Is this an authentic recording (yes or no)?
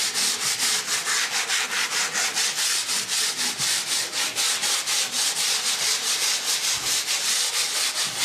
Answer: yes